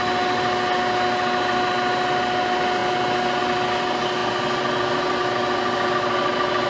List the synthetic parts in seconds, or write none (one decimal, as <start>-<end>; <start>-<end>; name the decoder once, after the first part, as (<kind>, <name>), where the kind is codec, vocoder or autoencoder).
none